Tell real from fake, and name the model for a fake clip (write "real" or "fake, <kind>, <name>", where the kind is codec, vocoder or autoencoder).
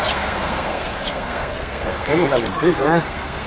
fake, codec, SNAC